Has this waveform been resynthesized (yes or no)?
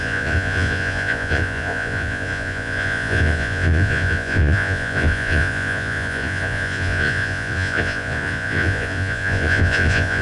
yes